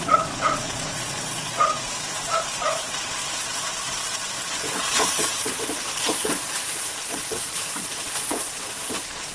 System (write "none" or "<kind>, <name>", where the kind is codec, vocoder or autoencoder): vocoder, Vocos